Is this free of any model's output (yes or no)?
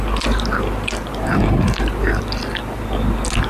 yes